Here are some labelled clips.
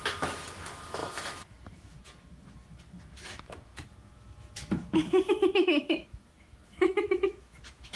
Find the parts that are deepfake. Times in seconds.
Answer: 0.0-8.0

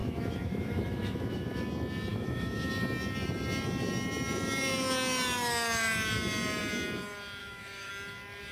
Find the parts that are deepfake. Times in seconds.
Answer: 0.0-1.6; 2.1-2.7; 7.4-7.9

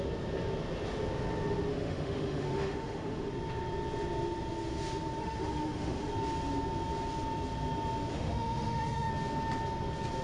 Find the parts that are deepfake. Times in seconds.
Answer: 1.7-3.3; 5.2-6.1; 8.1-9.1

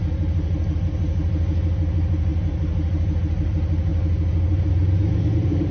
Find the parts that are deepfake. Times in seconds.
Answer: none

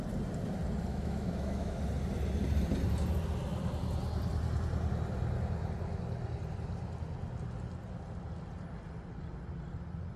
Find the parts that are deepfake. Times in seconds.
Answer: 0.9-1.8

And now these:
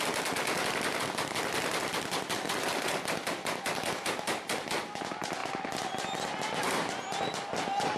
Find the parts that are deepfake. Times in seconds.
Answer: none

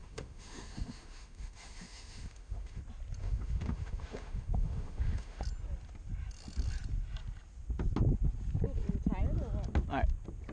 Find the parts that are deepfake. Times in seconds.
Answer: 0.0-2.8; 3.2-5.4